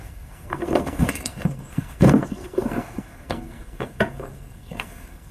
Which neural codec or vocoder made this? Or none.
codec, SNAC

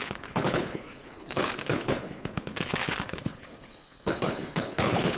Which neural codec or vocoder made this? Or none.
codec, HILCodec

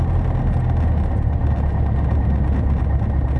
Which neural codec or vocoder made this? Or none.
none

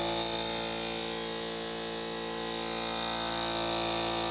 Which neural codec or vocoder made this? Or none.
none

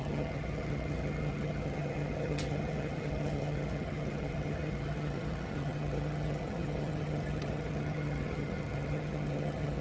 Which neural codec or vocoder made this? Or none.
vocoder, HiFi-GAN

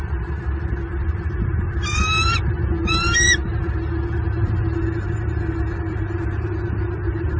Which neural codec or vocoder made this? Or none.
vocoder, BigVGAN v2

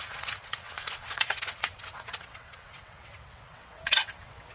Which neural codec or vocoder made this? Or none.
vocoder, WaveNeXt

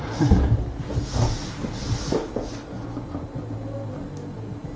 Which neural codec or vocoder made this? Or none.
none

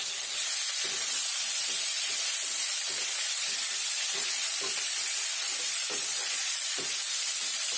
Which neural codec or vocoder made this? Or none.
none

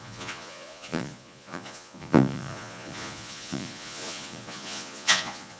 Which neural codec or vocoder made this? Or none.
vocoder, Vocos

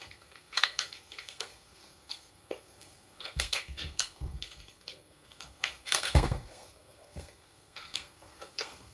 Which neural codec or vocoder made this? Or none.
codec, SNAC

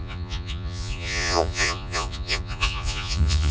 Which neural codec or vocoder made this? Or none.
vocoder, Vocos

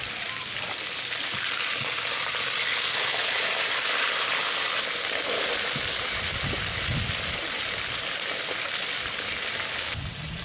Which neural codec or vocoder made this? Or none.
vocoder, BigVGAN v2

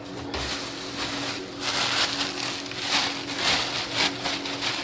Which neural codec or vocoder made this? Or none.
none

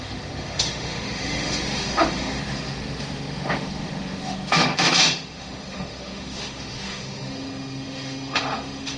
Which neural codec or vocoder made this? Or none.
autoencoder, DAC-VAE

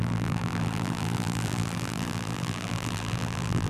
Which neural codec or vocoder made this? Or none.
vocoder, BigVGAN v2